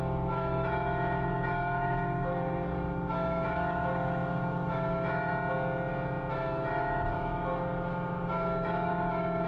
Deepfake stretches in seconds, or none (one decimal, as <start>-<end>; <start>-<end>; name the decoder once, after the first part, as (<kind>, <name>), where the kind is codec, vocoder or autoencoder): 0.0-5.3 (autoencoder, DAC-VAE); 6.3-9.5